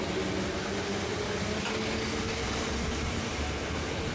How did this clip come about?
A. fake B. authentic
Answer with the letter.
B